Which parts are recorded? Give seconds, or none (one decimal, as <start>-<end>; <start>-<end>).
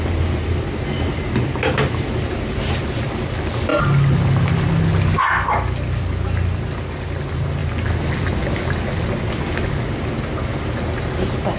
0.0-11.6